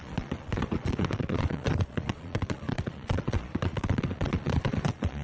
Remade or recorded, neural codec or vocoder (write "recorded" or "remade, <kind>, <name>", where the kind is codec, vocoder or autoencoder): remade, vocoder, Vocos